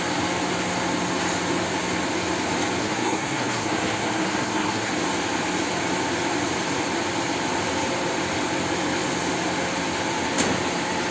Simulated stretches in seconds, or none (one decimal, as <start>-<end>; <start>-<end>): 2.8-4.9